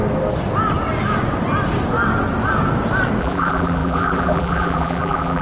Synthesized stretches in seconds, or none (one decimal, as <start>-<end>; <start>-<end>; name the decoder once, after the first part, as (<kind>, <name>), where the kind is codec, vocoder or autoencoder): 3.2-5.4 (vocoder, BigVGAN v2)